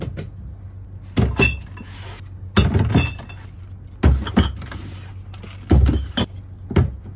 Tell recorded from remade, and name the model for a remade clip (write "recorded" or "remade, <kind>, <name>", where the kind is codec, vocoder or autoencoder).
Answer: recorded